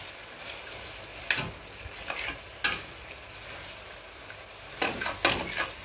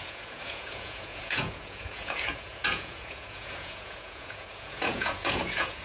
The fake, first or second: second